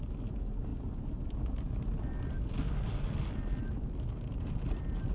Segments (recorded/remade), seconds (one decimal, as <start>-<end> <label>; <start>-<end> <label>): 0.0-5.1 recorded